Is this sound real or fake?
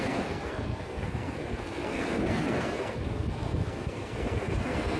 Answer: fake